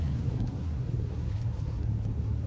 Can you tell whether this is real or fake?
fake